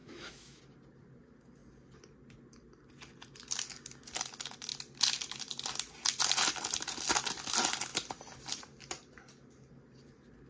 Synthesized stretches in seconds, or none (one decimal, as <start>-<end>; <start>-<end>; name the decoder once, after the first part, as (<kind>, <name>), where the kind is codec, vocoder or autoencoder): 0.0-0.6 (autoencoder, DAC-VAE)